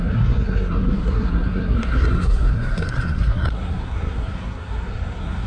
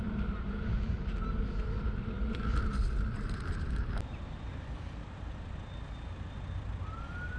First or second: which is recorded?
second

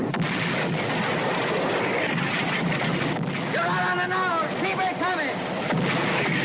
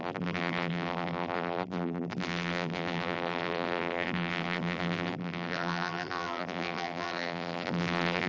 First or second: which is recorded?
first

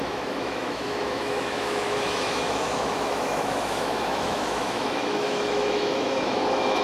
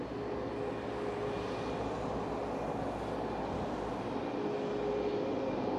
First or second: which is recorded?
second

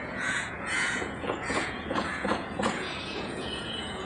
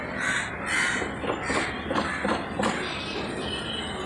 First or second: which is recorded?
second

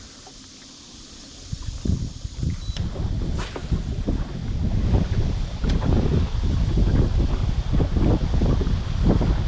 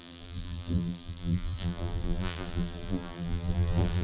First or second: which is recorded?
first